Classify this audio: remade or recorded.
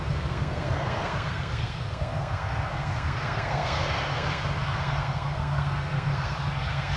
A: remade